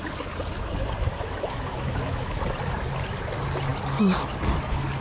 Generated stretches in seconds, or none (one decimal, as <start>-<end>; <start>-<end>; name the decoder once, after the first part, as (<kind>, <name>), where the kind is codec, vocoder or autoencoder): 1.1-2.4 (autoencoder, DAC-VAE)